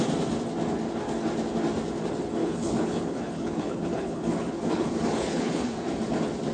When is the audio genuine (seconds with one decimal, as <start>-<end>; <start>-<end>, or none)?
0.0-2.4; 5.9-6.5